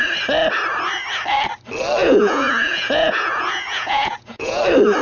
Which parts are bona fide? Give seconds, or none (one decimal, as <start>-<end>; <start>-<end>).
0.0-2.0; 4.6-5.0